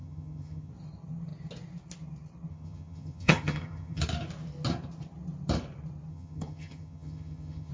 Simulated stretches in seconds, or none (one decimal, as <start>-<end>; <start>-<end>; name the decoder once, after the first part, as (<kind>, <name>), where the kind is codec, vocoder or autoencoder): 0.0-0.7 (vocoder, HiFi-GAN); 2.5-4.0; 6.1-7.7